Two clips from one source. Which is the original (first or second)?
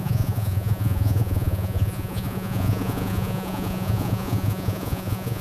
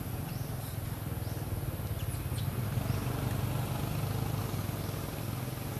second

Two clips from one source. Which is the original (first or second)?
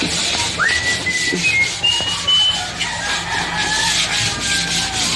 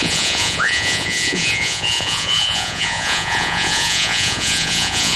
first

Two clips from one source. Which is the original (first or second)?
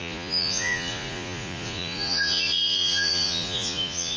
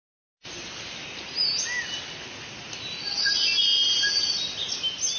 second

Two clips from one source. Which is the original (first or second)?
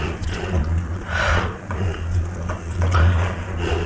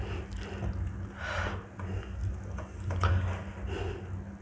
second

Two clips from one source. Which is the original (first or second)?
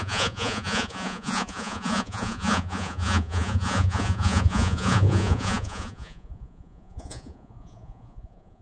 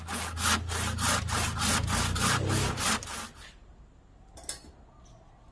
second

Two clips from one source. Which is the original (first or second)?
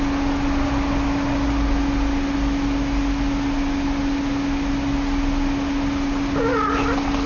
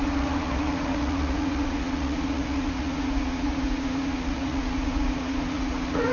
first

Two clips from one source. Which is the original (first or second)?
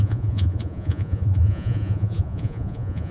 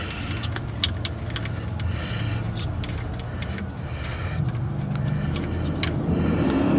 second